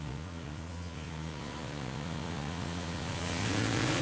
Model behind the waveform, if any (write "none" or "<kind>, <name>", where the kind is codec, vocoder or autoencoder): vocoder, Vocos